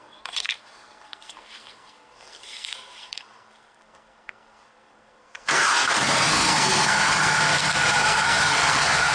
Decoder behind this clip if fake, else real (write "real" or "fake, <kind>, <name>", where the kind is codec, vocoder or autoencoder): fake, codec, SNAC